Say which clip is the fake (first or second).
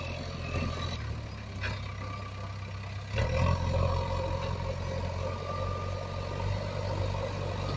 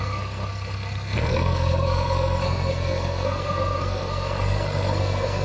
second